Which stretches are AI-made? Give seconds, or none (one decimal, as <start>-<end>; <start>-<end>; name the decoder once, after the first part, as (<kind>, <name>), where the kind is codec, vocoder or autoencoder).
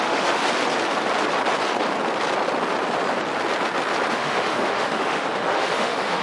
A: 0.0-0.4 (autoencoder, DAC-VAE); 4.1-6.2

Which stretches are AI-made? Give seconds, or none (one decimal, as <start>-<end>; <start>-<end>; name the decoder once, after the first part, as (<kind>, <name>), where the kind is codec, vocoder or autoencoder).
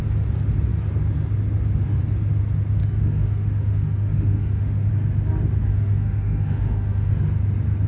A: 2.8-4.9 (autoencoder, DAC-VAE); 5.7-7.1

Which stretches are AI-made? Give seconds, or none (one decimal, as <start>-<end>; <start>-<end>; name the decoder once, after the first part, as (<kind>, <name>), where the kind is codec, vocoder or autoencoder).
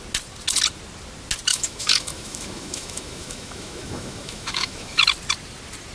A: 1.5-5.0 (autoencoder, DAC-VAE)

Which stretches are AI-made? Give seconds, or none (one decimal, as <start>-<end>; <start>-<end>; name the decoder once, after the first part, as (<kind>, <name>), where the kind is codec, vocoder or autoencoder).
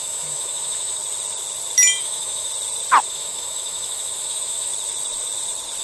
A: 0.0-1.0 (autoencoder, DAC-VAE); 2.0-2.5; 3.1-4.7